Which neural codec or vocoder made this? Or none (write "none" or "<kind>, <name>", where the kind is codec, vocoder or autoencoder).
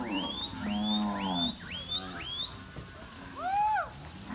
none